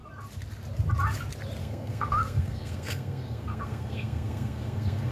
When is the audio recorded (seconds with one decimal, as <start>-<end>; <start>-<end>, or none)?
0.0-1.6